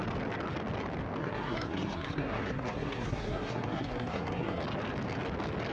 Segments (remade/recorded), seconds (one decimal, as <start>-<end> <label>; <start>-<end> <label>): 0.0-1.2 recorded; 1.2-4.6 remade; 4.6-5.7 recorded